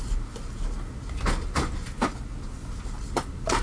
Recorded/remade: recorded